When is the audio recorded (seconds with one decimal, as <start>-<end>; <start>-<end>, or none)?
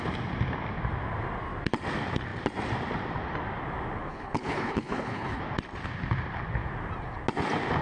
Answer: 0.0-4.1; 5.4-7.8